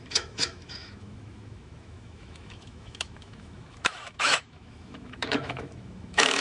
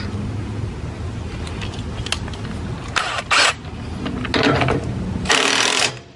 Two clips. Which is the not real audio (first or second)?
first